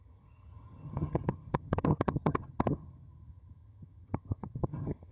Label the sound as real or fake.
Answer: fake